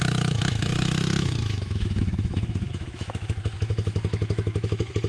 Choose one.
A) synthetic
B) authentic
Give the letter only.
A